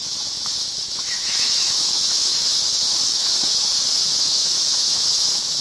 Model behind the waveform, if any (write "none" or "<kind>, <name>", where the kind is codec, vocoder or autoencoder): autoencoder, DAC-VAE